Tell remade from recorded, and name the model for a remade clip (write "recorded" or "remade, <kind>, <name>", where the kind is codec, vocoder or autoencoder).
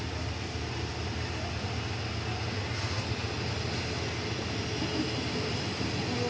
recorded